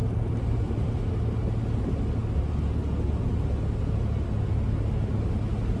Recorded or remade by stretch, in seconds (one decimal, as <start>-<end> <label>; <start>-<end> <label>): 0.0-1.1 remade; 1.1-5.8 recorded

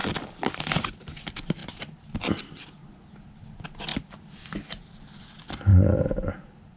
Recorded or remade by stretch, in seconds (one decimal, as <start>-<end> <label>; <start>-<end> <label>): 0.0-0.6 remade; 0.6-3.9 recorded; 3.9-4.7 remade; 4.7-6.8 recorded

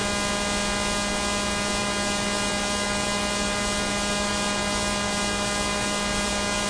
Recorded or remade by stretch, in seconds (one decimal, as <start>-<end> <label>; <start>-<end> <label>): 0.0-6.7 recorded